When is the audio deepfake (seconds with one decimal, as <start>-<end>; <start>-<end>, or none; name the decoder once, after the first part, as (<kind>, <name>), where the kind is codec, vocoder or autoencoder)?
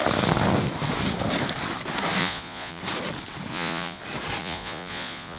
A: 2.2-2.8 (vocoder, Vocos); 3.5-4.0; 4.4-5.4